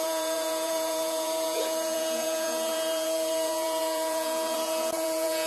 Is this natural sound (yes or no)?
no